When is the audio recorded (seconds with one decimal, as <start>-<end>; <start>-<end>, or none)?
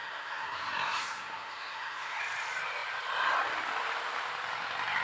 2.2-5.0